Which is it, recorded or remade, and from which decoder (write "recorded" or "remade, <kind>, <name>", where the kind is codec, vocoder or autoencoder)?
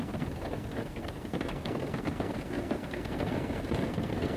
remade, codec, SNAC